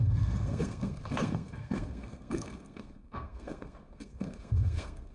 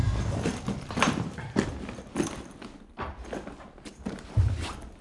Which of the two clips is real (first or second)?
second